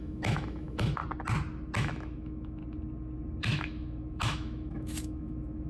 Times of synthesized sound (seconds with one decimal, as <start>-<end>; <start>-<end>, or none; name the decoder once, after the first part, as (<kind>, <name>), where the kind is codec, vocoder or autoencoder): 0.0-1.0 (autoencoder, DAC-VAE); 1.8-2.6; 3.4-5.7